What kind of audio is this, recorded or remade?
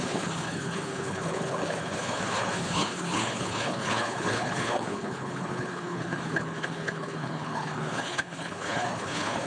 remade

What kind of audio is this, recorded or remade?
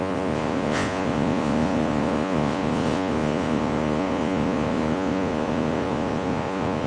remade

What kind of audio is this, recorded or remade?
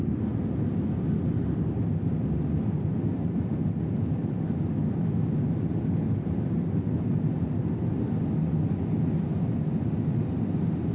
recorded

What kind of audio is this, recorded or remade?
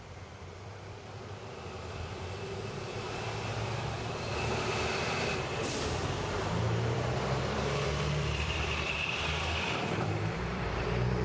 remade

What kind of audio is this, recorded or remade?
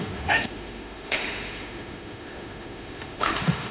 remade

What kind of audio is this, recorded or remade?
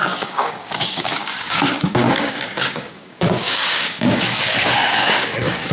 remade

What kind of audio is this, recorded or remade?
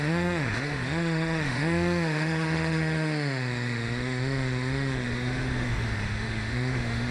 remade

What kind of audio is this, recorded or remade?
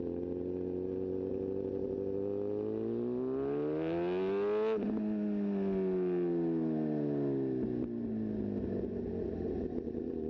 recorded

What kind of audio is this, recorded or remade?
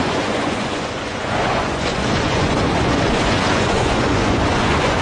remade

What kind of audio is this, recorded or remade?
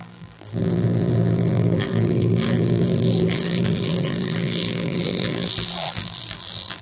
remade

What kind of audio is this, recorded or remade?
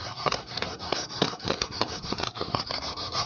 remade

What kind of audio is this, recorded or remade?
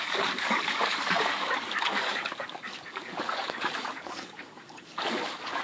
remade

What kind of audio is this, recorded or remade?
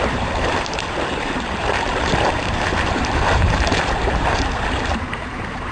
remade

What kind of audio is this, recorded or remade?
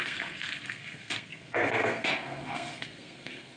remade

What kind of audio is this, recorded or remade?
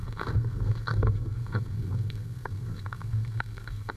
remade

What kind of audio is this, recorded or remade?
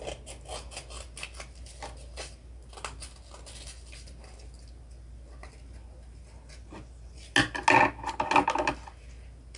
recorded